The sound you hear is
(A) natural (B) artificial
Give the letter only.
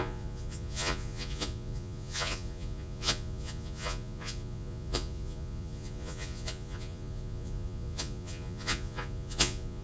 B